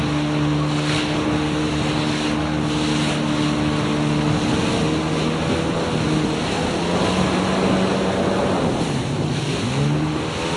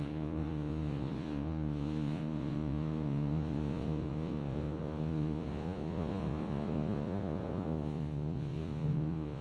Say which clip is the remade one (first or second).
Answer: second